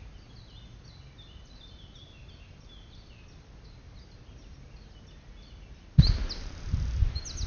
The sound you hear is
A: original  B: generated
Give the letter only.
A